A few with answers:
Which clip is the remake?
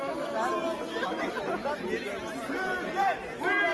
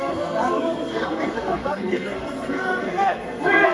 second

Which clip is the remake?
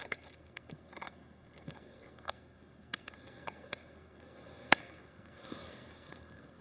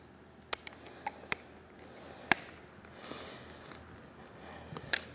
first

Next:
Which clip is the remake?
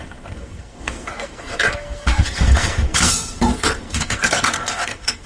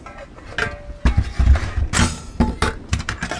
first